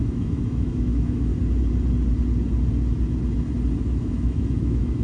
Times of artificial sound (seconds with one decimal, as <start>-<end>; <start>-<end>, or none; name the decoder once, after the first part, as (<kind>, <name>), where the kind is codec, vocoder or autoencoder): 0.0-1.3 (autoencoder, DAC-VAE); 3.8-5.0